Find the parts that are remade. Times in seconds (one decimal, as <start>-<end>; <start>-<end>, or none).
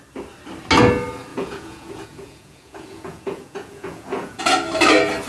1.3-4.4